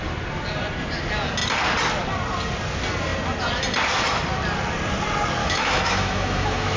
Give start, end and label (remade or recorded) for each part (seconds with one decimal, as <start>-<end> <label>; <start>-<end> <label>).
0.0-5.4 recorded; 5.4-6.8 remade